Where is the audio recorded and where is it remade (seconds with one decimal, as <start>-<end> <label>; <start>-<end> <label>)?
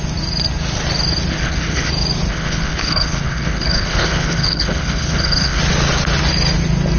0.0-1.3 recorded; 1.3-1.9 remade; 1.9-2.3 recorded; 2.3-5.6 remade; 5.6-7.0 recorded